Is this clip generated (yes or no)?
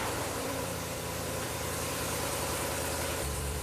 yes